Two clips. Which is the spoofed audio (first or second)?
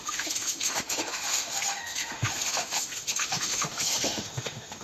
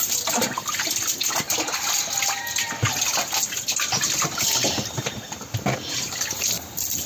first